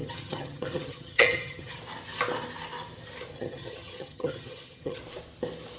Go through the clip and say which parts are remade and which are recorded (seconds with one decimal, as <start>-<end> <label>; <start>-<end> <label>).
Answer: 0.0-1.8 remade; 1.8-3.3 recorded; 3.3-5.0 remade; 5.0-5.8 recorded